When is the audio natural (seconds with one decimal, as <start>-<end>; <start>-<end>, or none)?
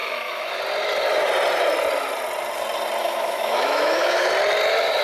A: 0.6-3.0; 4.3-5.0